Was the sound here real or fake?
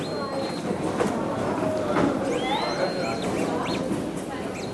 real